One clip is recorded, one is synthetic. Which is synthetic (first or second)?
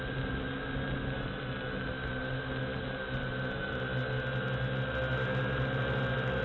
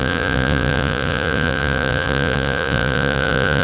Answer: second